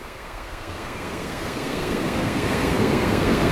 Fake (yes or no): yes